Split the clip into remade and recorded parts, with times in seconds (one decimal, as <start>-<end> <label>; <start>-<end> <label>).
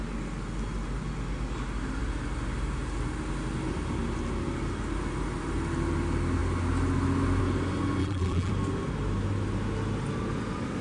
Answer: 0.0-8.0 recorded; 8.0-8.5 remade; 8.5-10.8 recorded